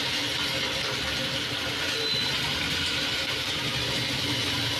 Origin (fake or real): real